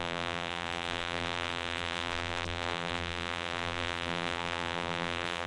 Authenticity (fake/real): fake